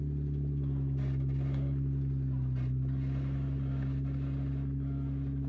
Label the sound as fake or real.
real